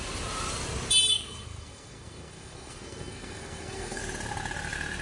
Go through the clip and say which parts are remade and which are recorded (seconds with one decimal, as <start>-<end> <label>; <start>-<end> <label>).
0.0-1.1 recorded; 1.1-4.0 remade; 4.0-5.0 recorded

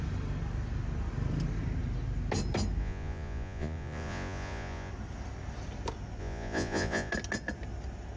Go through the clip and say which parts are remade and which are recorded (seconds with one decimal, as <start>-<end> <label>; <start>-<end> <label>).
0.0-2.8 recorded; 2.8-4.9 remade; 4.9-6.2 recorded; 6.2-7.1 remade; 7.1-8.2 recorded

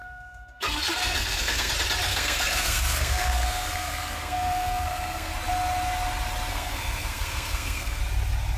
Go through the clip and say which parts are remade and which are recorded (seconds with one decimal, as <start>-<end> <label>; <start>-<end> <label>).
0.0-1.7 remade; 1.7-2.1 recorded; 2.1-5.3 remade; 5.3-6.5 recorded; 6.5-8.0 remade; 8.0-8.6 recorded

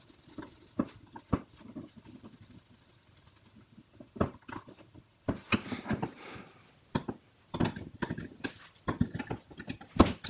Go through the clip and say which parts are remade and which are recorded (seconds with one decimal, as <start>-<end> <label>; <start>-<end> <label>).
0.0-10.3 recorded

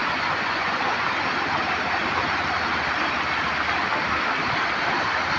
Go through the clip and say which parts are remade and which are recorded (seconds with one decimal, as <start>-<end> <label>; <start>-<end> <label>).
0.0-1.0 remade; 1.0-5.4 recorded

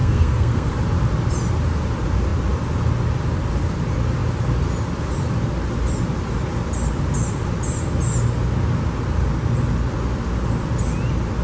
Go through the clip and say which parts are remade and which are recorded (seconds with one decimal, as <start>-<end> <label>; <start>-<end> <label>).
0.0-0.7 remade; 0.7-11.4 recorded

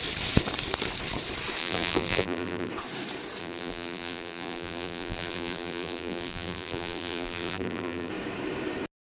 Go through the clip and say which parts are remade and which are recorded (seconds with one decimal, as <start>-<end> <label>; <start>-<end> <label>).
0.0-1.6 recorded; 1.6-2.7 remade; 2.7-3.4 recorded; 3.4-8.1 remade; 8.1-9.1 recorded